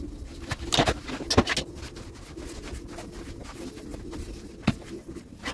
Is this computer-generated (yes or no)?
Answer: no